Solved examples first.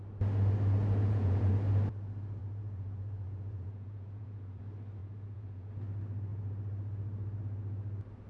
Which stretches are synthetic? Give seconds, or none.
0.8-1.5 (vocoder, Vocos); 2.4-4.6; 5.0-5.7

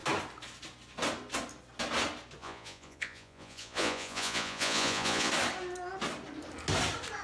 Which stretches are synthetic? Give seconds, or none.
2.4-5.3 (vocoder, Vocos)